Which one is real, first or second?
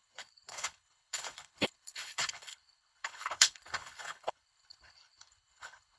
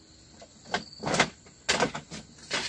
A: second